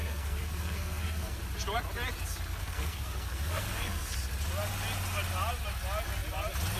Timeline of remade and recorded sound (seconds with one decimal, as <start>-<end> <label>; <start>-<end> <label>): 0.0-1.4 remade; 1.4-2.6 recorded; 2.6-4.1 remade; 4.1-6.8 recorded